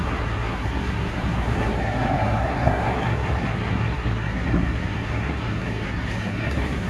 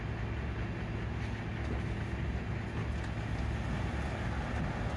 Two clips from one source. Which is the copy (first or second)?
first